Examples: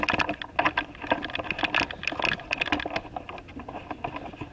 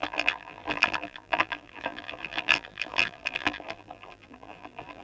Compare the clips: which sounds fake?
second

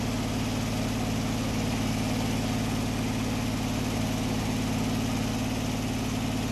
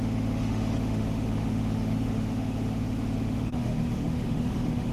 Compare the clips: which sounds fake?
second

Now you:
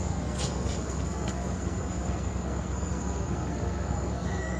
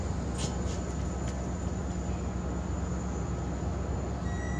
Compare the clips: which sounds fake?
first